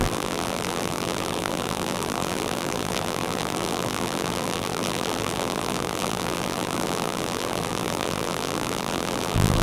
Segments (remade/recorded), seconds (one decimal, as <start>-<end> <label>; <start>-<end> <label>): 0.0-9.6 remade